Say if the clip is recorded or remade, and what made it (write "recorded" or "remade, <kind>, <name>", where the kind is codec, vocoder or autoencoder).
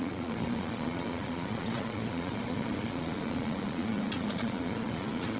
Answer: remade, vocoder, Vocos